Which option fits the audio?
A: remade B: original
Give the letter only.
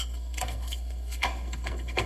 A